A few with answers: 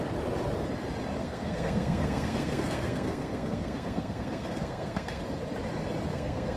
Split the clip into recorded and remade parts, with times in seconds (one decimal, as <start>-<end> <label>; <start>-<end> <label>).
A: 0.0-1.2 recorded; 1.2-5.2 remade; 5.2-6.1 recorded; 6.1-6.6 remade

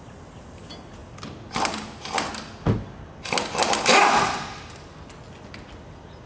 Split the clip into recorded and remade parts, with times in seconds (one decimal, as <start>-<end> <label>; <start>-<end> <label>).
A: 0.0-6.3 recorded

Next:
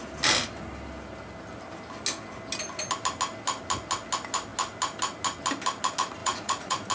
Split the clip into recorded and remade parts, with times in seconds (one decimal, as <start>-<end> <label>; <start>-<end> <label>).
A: 0.0-6.2 recorded; 6.2-6.9 remade

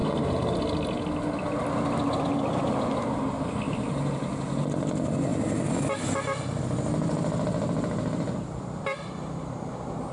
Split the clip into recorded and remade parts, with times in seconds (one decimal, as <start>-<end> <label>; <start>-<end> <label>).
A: 0.0-10.1 recorded